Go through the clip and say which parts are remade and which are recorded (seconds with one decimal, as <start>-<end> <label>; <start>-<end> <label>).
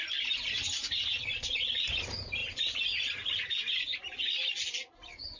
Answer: 0.0-2.4 recorded; 2.4-4.2 remade; 4.2-5.4 recorded